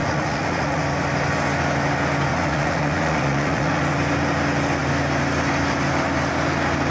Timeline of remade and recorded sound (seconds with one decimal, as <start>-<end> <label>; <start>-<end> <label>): 0.0-0.8 remade; 0.8-2.3 recorded; 2.3-3.8 remade; 3.8-6.9 recorded